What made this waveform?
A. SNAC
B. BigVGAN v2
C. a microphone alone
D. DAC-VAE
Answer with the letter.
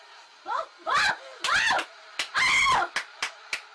C